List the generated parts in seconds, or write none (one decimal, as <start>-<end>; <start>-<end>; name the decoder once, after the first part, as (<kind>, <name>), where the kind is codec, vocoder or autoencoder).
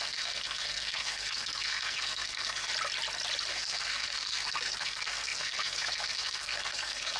0.0-2.7 (codec, SNAC); 3.5-7.2